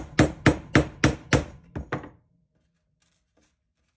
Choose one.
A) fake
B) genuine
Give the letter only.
B